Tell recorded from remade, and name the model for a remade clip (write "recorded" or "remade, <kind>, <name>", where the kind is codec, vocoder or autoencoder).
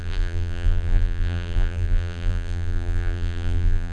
remade, vocoder, BigVGAN v2